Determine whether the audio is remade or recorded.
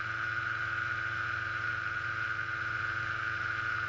recorded